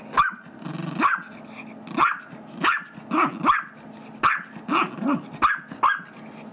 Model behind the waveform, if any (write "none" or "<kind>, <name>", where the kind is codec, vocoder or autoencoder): none